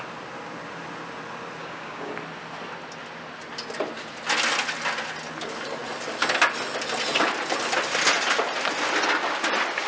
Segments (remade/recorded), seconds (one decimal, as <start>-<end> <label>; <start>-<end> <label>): 0.0-1.6 recorded; 1.6-2.1 remade; 2.1-9.9 recorded